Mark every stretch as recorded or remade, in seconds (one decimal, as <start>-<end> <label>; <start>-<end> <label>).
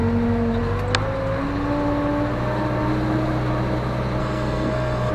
0.0-4.2 recorded; 4.2-5.1 remade